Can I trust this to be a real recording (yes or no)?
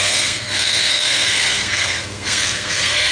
no